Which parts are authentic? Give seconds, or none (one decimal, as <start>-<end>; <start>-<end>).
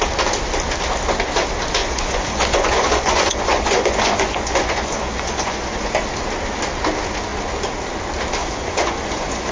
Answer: 0.0-1.8; 5.9-8.4